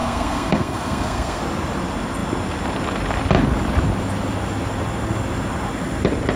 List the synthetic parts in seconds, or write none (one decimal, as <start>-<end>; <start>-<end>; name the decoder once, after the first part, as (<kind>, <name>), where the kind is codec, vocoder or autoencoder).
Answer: 0.0-1.4 (codec, SNAC)